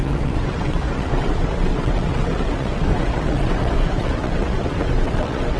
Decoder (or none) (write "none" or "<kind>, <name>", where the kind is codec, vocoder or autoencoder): vocoder, WaveNeXt